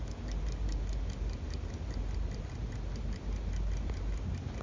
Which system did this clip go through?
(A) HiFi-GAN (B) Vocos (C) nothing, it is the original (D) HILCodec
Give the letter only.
C